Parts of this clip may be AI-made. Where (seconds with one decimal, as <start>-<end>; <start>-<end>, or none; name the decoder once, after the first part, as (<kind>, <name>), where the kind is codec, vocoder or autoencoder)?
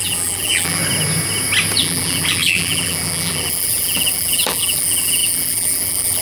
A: 0.0-0.8 (vocoder, BigVGAN v2); 1.8-6.2